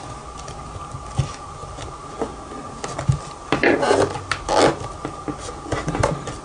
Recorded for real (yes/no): yes